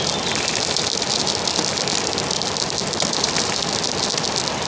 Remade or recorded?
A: recorded